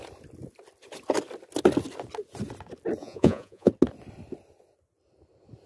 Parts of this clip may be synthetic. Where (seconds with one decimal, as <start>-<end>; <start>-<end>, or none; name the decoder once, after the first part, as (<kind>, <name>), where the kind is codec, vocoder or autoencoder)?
3.0-3.7 (vocoder, Vocos)